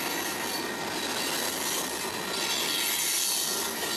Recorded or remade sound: recorded